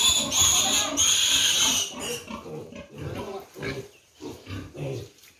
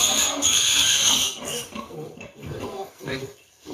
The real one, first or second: first